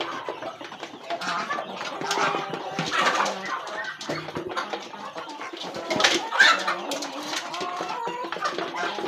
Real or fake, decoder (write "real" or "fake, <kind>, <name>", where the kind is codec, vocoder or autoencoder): real